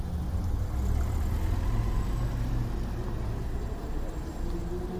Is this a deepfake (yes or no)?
no